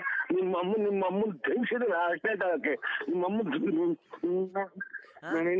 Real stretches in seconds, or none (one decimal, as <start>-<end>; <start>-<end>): 0.0-1.6; 3.1-4.5

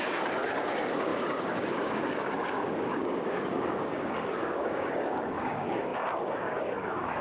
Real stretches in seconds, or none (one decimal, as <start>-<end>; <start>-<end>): none

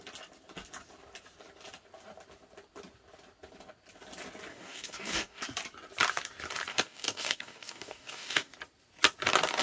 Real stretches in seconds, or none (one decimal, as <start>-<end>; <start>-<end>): 0.0-4.5; 5.4-6.7; 8.5-9.6

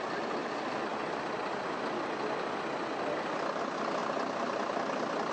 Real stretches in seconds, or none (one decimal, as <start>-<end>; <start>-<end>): 0.0-5.3

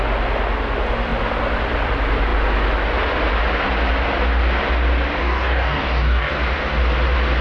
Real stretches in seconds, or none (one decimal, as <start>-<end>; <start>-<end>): 0.0-5.2; 6.3-7.4

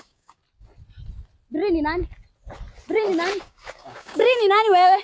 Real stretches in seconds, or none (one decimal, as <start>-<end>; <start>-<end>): 0.4-3.4